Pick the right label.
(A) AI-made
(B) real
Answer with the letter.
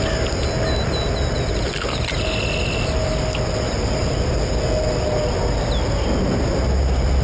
B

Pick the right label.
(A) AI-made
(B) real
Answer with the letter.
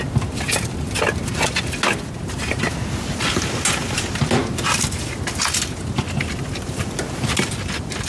B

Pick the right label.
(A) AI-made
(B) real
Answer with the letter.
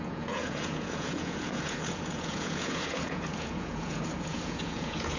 A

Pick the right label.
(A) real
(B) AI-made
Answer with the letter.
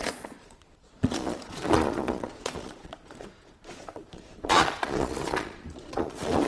B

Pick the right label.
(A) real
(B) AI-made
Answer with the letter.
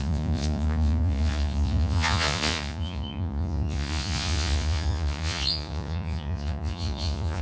B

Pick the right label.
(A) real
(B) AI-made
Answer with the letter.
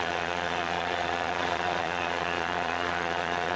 B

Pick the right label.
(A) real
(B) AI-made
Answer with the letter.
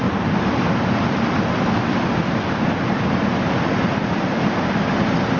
A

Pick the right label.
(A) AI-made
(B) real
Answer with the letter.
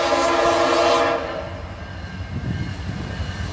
B